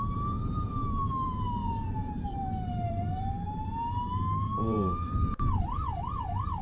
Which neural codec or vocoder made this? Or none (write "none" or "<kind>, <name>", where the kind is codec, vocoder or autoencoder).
vocoder, BigVGAN v2